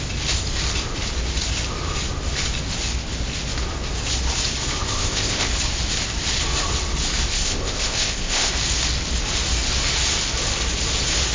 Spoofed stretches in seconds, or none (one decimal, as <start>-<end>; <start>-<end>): 4.8-5.5; 7.3-8.5